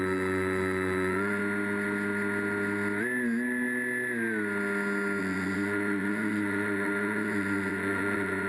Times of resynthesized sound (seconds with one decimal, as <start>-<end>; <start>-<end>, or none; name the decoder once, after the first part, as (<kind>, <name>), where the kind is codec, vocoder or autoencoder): 0.0-1.4 (vocoder, Vocos); 5.2-8.5